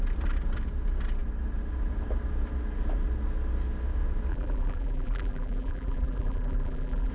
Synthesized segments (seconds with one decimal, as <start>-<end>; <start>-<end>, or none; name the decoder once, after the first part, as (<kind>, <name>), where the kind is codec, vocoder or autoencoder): 4.3-7.1 (vocoder, BigVGAN v2)